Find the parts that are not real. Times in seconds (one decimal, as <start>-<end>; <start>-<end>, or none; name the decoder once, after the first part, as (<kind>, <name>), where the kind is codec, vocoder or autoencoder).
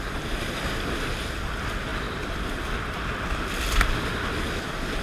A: none